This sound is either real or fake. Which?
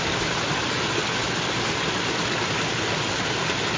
real